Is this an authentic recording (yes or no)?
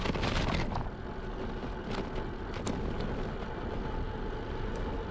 yes